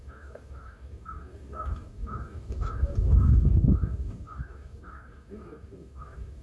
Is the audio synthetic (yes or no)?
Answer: yes